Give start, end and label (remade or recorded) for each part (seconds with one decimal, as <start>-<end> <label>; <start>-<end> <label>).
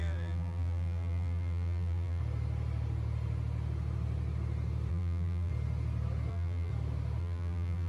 0.0-2.2 remade; 2.2-4.9 recorded; 4.9-5.5 remade; 5.5-6.3 recorded; 6.3-6.7 remade; 6.7-7.2 recorded; 7.2-7.9 remade